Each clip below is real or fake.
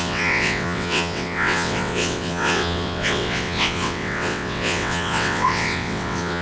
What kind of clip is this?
fake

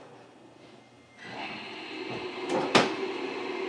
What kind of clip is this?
real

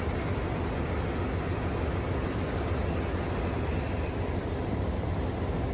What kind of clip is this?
real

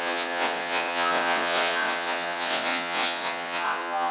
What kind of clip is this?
fake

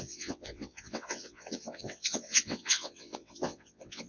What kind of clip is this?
fake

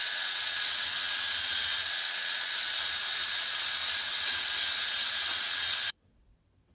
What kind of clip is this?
fake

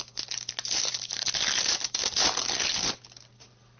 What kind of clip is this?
real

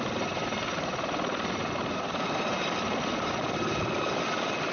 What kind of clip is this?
real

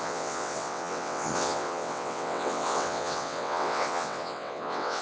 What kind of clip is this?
fake